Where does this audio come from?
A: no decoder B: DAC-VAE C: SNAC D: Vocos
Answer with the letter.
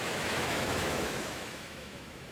B